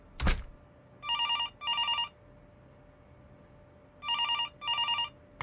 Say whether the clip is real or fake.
real